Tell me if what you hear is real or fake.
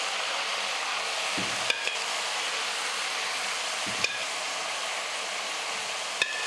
real